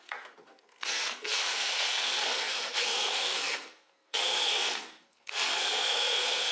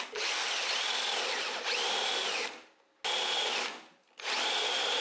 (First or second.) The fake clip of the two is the first